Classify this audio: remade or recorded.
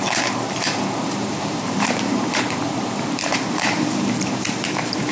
remade